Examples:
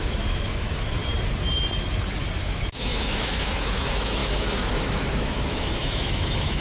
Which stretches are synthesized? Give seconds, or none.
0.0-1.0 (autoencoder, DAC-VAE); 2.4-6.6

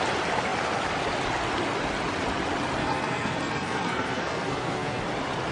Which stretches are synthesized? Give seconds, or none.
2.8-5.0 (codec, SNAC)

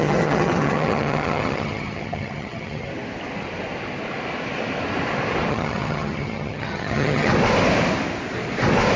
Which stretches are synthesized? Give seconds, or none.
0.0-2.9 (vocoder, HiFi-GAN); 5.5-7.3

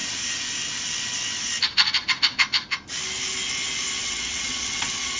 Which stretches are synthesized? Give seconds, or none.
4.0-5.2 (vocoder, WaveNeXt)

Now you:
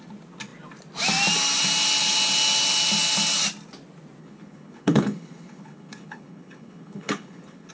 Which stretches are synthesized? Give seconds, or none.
4.2-7.7 (codec, HILCodec)

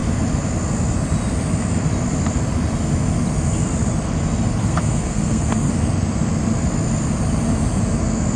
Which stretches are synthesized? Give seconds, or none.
4.6-5.7 (codec, SNAC)

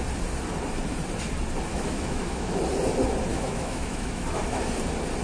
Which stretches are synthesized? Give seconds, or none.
1.7-2.6 (autoencoder, DAC-VAE); 3.3-4.6